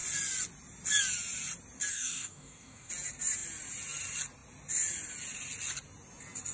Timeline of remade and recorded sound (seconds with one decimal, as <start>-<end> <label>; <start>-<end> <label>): 0.0-1.9 recorded; 1.9-2.9 remade; 2.9-6.5 recorded